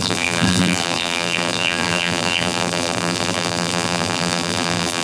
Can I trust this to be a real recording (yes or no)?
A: no